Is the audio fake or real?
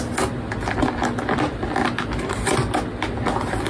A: real